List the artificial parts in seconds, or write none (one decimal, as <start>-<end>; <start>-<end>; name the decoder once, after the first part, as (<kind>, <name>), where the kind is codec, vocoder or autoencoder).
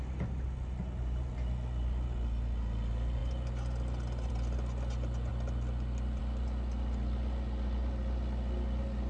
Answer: none